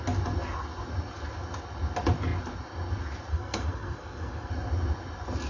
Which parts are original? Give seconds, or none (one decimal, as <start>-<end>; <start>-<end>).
0.0-3.3; 4.5-5.5